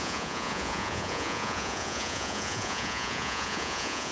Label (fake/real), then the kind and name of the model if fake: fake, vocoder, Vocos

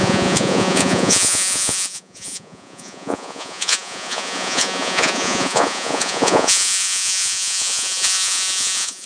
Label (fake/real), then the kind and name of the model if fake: fake, vocoder, Vocos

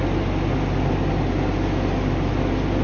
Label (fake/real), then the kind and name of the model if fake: real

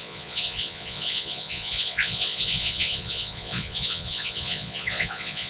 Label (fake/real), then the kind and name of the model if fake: fake, vocoder, Vocos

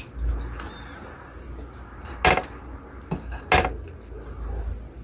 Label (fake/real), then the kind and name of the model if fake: real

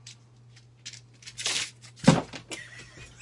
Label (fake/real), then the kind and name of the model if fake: real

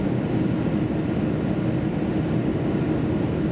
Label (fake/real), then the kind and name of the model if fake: real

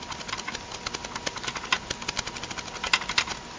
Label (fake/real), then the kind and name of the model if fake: real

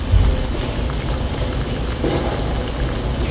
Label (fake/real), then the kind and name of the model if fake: real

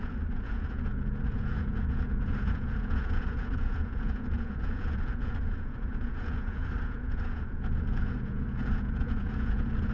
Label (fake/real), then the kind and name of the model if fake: fake, vocoder, Vocos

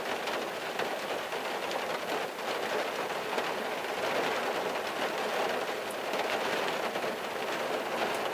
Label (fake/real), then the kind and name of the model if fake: real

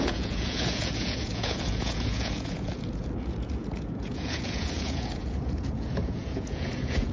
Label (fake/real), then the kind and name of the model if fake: fake, vocoder, Vocos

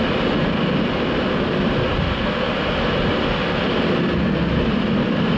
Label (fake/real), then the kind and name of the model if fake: real